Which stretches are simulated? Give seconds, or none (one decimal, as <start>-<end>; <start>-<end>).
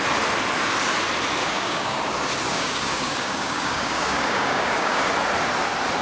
1.4-2.0; 2.5-5.1